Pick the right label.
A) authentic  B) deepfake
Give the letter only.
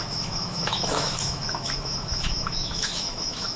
B